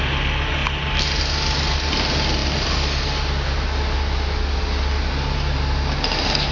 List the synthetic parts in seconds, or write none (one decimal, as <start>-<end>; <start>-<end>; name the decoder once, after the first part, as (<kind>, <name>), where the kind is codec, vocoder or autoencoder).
none